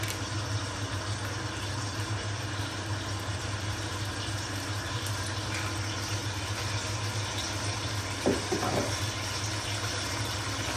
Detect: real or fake real